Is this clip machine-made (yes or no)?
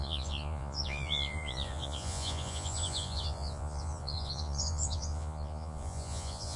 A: yes